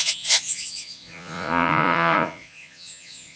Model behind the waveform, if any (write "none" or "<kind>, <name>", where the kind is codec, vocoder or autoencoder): vocoder, Vocos